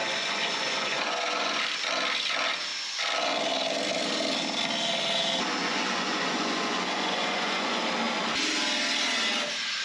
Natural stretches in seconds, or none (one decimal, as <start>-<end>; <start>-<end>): 1.6-5.6; 7.8-9.8